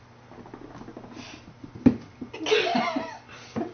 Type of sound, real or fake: real